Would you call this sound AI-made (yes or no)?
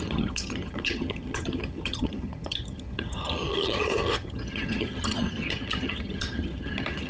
yes